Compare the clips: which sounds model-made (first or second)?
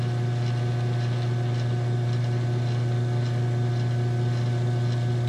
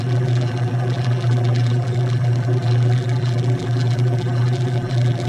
second